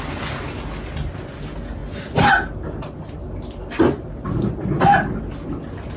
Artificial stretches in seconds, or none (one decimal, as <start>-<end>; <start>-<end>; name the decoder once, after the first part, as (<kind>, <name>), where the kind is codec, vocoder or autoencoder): none